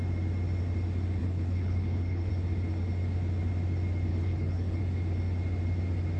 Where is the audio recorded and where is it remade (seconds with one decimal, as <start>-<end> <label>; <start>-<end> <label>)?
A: 0.0-1.2 recorded; 1.2-2.3 remade; 2.3-4.1 recorded; 4.1-4.8 remade; 4.8-6.2 recorded